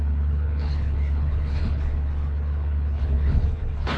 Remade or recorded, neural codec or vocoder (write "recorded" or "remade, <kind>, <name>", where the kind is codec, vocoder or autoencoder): remade, codec, HILCodec